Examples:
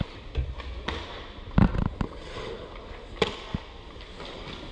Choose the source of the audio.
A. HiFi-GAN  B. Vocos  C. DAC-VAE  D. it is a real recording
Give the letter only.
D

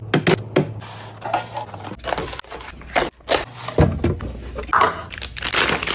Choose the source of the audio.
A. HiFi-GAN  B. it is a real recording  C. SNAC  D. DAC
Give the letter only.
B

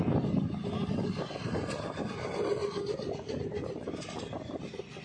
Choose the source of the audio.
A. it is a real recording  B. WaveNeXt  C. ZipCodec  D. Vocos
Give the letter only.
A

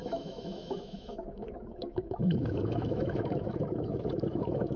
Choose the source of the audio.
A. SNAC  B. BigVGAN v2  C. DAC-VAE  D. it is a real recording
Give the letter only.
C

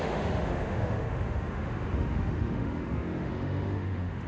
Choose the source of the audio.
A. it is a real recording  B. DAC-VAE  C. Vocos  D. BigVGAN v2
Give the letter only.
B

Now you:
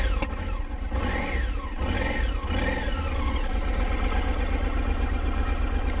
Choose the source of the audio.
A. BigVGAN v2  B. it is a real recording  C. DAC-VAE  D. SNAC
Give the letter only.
B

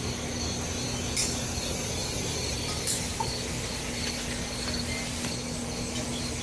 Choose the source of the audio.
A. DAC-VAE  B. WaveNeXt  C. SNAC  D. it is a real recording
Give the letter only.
D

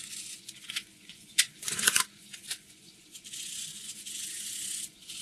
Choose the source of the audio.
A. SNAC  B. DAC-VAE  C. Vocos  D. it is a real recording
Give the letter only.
C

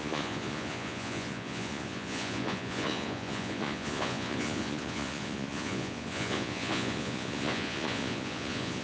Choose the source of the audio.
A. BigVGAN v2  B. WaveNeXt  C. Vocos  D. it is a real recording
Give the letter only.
C